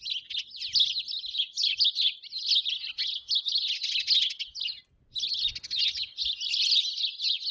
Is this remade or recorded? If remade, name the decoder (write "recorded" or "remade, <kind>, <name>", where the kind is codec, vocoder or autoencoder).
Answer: recorded